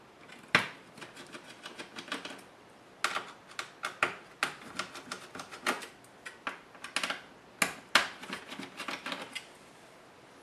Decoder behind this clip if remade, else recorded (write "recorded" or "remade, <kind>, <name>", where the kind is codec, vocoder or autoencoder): recorded